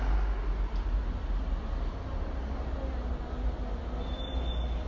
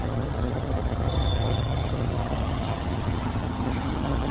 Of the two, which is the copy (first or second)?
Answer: second